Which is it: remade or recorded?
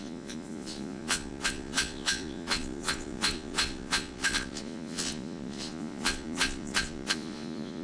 remade